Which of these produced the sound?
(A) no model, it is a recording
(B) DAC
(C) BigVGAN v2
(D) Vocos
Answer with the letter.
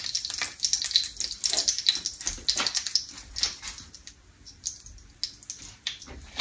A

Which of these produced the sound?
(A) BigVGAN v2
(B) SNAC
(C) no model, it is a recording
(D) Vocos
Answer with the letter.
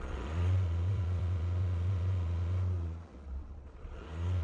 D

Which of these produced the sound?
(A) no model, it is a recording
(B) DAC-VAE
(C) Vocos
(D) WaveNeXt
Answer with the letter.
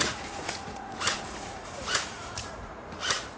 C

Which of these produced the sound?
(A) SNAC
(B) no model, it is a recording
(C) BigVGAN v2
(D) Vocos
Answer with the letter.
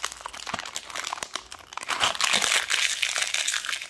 B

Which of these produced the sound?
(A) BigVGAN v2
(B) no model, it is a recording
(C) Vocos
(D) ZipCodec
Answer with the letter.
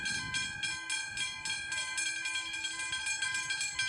B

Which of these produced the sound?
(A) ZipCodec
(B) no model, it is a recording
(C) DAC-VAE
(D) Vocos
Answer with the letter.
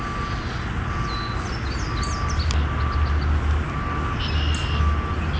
B